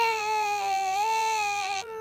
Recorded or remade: remade